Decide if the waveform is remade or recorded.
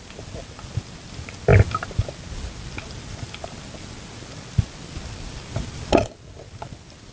recorded